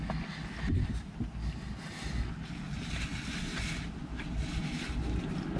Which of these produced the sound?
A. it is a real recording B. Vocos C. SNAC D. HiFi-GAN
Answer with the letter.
A